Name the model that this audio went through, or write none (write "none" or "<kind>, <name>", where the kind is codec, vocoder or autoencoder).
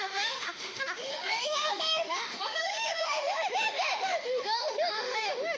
autoencoder, DAC-VAE